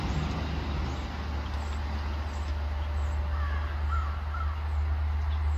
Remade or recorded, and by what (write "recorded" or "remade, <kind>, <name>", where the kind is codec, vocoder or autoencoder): recorded